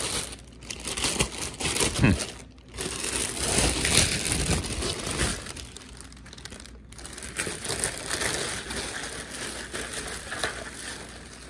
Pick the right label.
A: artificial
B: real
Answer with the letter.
B